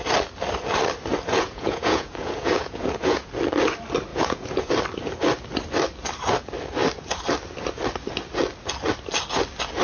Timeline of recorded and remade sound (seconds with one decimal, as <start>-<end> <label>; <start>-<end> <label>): 0.0-1.3 recorded; 1.3-3.3 remade; 3.3-4.1 recorded; 4.1-4.7 remade; 4.7-9.8 recorded